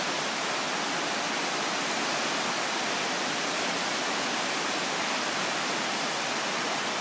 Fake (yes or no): no